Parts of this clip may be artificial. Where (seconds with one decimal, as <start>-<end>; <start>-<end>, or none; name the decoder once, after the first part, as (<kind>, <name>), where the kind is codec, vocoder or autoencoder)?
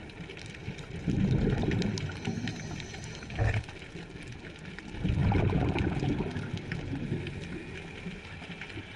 none